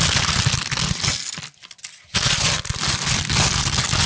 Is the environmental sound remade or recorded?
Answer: recorded